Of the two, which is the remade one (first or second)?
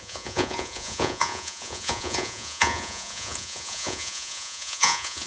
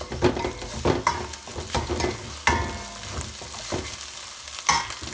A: first